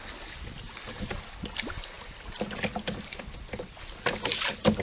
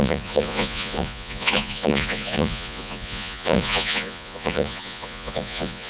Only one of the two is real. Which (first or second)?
first